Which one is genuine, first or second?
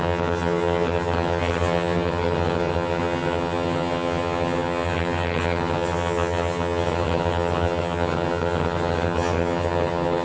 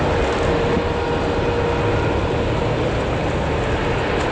second